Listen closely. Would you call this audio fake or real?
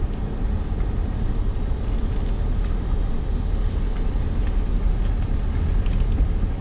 real